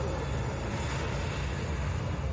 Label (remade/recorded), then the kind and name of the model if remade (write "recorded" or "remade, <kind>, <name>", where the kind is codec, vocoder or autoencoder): recorded